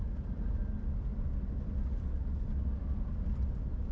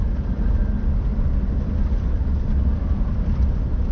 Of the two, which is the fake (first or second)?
second